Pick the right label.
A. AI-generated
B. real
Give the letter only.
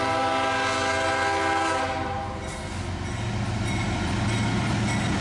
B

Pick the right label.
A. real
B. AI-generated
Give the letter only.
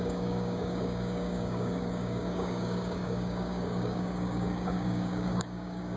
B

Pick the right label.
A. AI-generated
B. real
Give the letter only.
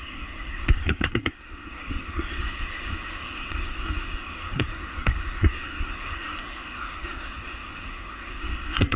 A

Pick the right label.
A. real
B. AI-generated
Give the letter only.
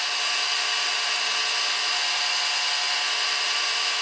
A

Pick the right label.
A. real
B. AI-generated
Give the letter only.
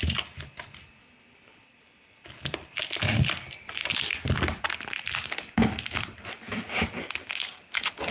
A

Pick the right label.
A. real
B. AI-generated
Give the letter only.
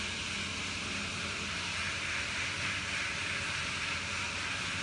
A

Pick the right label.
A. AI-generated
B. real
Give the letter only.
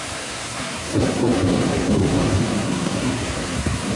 A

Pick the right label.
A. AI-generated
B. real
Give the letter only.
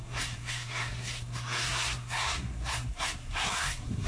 A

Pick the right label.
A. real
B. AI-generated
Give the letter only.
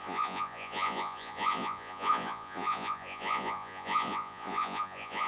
B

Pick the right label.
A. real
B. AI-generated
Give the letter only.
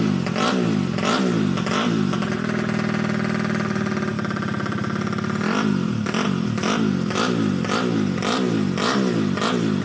A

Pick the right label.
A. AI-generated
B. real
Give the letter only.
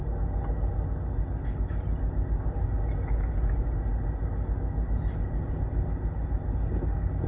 B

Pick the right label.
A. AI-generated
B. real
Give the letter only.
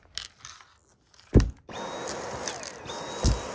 B